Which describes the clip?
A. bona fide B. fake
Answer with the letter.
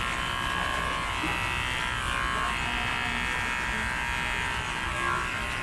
A